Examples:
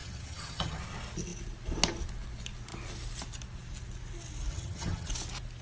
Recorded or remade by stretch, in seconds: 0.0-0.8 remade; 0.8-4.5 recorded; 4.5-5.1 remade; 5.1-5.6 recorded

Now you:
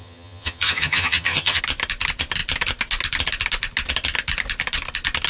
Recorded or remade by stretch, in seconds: 0.0-1.6 remade; 1.6-5.3 recorded

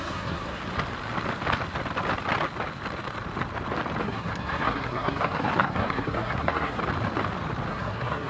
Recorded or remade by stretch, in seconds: 0.0-0.6 remade; 0.6-4.0 recorded; 4.0-6.8 remade; 6.8-7.7 recorded; 7.7-8.3 remade

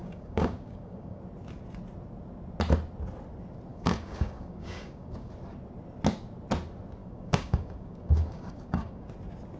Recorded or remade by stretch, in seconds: 0.0-1.2 remade; 1.2-3.7 recorded; 3.7-5.3 remade; 5.3-7.0 recorded; 7.0-9.1 remade; 9.1-9.6 recorded

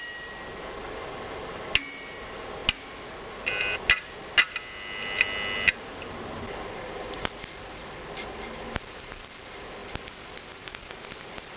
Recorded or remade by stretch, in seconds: 0.0-11.6 recorded

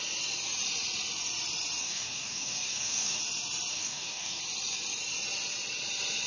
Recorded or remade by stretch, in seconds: 0.0-1.8 recorded; 1.8-3.2 remade; 3.2-3.7 recorded; 3.7-4.4 remade; 4.4-6.3 recorded